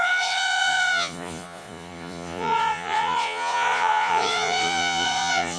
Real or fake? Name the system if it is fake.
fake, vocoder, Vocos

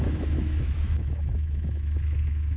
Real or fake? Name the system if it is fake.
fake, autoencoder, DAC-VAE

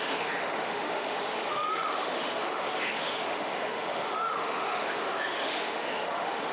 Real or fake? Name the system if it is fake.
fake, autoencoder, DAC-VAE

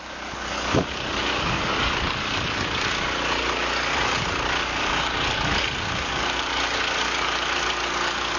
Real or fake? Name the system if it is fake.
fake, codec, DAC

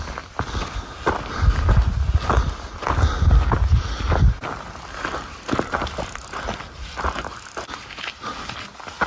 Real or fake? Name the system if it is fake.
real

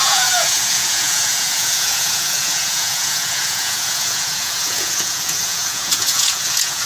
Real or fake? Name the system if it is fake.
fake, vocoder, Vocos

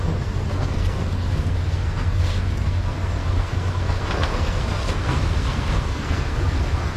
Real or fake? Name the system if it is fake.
fake, codec, SNAC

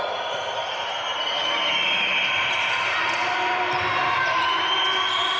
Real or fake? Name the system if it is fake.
real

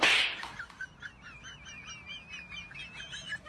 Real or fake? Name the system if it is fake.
real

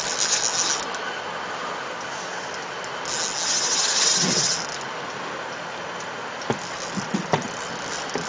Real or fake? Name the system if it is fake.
real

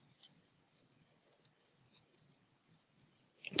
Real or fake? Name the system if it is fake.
real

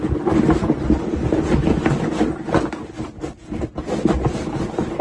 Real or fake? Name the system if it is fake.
real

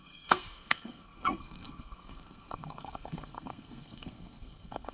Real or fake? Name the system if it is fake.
fake, codec, SNAC